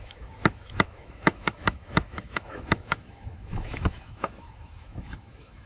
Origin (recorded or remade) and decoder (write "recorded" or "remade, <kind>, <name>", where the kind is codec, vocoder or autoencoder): remade, autoencoder, DAC-VAE